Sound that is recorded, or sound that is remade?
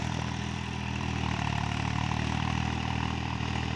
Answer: remade